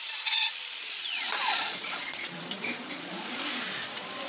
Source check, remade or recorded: remade